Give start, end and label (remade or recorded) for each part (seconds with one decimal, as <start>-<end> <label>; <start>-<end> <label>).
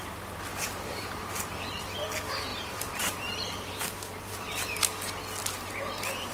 0.0-0.5 recorded; 0.5-1.8 remade; 1.8-2.5 recorded; 2.5-4.8 remade; 4.8-5.4 recorded; 5.4-6.3 remade